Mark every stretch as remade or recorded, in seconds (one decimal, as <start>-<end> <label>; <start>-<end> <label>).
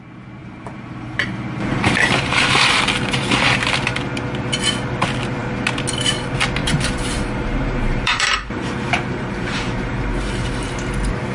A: 0.0-0.4 recorded; 0.4-2.8 remade; 2.8-6.6 recorded; 6.6-10.7 remade; 10.7-11.3 recorded